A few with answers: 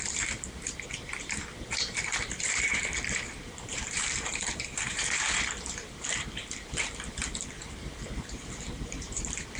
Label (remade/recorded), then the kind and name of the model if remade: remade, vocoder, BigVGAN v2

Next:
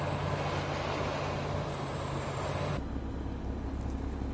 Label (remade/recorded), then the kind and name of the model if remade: recorded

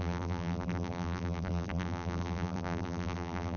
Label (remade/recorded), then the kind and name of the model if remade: remade, vocoder, BigVGAN v2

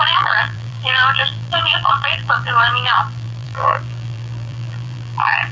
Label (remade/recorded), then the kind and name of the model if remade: remade, vocoder, BigVGAN v2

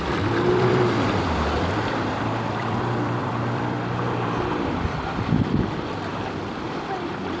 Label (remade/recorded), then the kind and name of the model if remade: remade, vocoder, BigVGAN v2